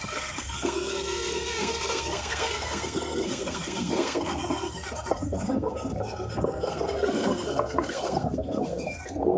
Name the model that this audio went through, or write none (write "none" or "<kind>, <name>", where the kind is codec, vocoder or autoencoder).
codec, SNAC